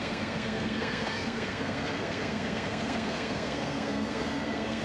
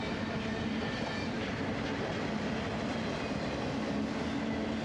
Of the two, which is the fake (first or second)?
first